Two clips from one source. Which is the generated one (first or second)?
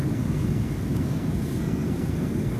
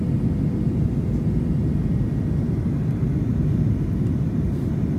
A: first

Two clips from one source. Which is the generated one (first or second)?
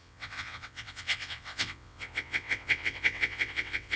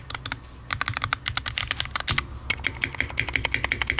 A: first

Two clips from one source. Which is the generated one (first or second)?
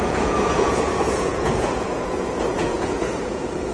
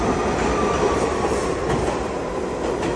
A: first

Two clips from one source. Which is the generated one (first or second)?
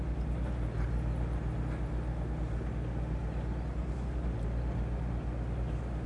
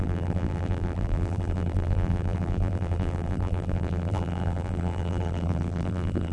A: second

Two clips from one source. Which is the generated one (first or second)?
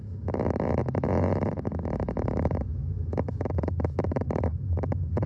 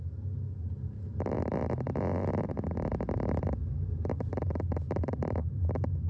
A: first